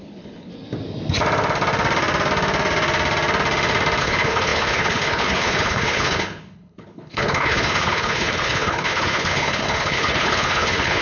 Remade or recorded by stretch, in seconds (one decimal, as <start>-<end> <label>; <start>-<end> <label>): 0.0-0.5 remade; 0.5-4.0 recorded; 4.0-11.0 remade